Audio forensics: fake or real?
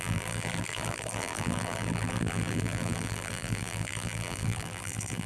fake